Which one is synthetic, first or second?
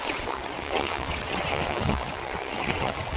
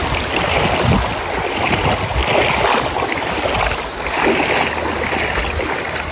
first